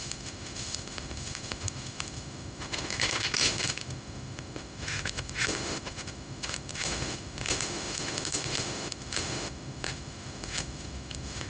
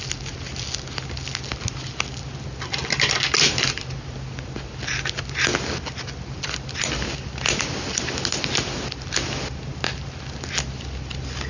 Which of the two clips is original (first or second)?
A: second